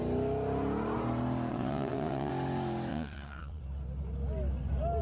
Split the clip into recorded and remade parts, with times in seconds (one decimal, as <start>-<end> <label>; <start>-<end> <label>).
0.0-1.5 recorded; 1.5-2.3 remade; 2.3-2.9 recorded; 2.9-3.6 remade; 3.6-5.0 recorded